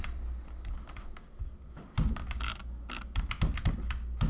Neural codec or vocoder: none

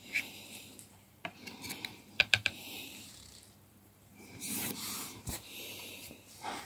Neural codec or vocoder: vocoder, BigVGAN v2